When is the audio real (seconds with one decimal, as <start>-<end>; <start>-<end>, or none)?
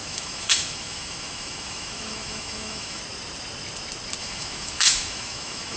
3.0-4.2